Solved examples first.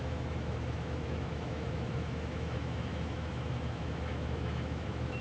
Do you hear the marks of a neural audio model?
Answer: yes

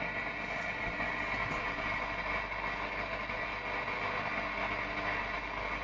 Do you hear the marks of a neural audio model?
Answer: no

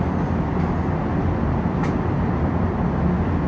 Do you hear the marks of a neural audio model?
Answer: no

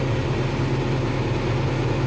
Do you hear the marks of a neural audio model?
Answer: no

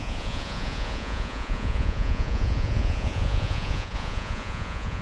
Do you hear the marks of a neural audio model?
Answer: yes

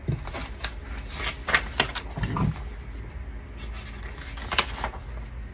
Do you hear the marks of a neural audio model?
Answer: no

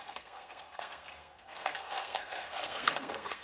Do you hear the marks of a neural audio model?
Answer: yes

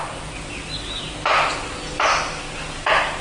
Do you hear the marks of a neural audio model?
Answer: no